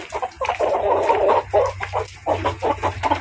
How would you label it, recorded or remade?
recorded